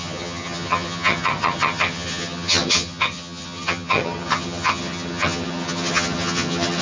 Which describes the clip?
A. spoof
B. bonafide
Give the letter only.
A